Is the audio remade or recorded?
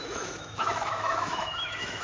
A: remade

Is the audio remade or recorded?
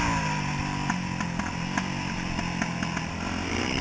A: recorded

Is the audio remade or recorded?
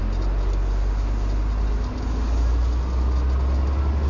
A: recorded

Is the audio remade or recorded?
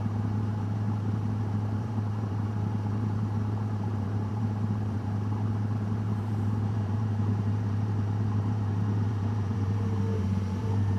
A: remade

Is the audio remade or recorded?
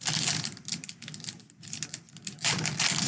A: recorded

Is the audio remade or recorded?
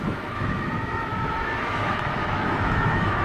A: remade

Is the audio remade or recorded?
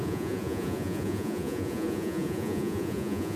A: remade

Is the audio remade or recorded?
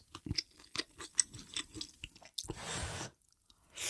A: recorded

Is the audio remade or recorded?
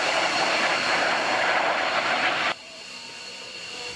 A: remade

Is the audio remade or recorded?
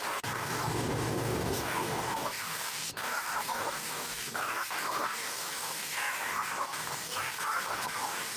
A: remade